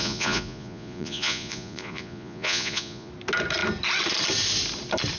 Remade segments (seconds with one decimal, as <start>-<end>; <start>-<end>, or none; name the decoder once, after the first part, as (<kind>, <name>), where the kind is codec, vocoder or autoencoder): 0.0-3.1 (vocoder, Vocos)